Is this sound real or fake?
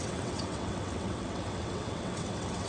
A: fake